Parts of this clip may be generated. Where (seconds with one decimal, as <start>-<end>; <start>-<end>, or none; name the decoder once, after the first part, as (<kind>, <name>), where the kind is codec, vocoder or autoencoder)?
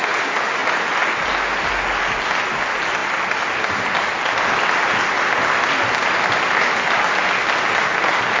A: none